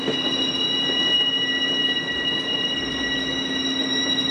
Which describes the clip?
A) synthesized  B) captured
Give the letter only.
B